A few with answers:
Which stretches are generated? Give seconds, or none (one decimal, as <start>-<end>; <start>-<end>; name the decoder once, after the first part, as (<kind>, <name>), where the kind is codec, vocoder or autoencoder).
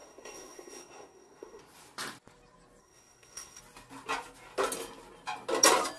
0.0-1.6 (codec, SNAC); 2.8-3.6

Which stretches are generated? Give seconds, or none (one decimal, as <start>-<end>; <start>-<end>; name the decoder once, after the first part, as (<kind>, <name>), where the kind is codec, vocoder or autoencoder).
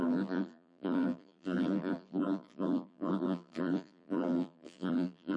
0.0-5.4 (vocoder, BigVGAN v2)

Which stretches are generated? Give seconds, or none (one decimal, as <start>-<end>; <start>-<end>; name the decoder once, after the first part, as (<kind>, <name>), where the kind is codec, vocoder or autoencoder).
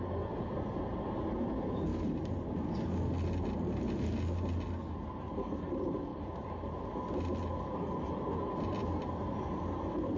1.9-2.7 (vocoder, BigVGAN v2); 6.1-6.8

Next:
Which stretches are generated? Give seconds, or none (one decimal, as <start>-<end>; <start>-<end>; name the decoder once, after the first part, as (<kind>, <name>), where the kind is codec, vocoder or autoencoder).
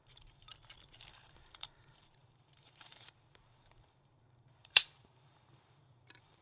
0.0-0.5 (vocoder, BigVGAN v2); 1.1-6.4